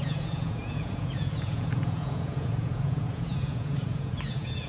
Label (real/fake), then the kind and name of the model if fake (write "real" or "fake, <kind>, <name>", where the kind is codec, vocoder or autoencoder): fake, vocoder, Vocos